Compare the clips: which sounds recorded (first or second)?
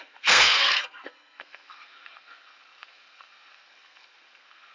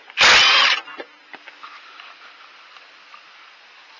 second